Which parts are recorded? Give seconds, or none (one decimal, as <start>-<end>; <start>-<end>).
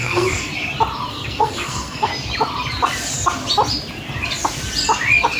0.5-1.1; 2.1-5.4